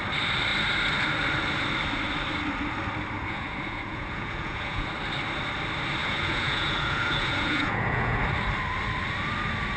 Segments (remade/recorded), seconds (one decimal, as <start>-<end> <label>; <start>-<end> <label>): 0.0-3.2 recorded; 3.2-4.9 remade; 4.9-6.0 recorded; 6.0-8.2 remade; 8.2-9.8 recorded